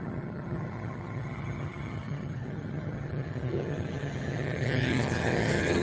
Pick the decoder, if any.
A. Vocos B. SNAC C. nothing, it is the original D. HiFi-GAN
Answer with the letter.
D